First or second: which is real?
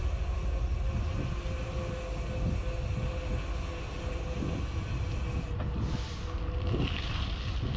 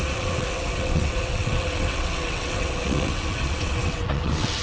first